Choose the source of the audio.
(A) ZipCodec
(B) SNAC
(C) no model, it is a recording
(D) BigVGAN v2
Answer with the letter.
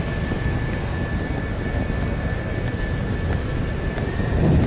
C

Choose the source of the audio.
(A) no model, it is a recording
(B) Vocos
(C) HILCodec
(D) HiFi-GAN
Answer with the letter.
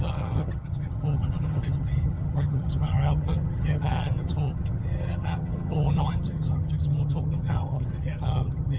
D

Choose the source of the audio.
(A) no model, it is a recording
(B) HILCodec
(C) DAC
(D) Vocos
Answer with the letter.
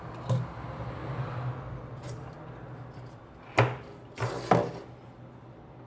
A